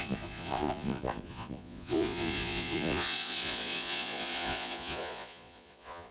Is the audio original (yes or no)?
no